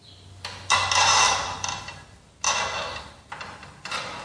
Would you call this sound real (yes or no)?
yes